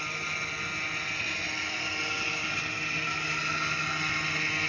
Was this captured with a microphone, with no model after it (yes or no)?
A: yes